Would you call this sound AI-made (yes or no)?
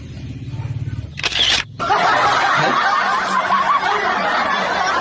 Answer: no